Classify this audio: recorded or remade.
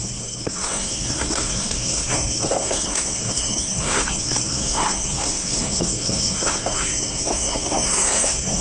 remade